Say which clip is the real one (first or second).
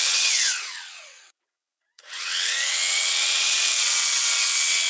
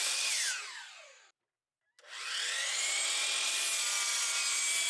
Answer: second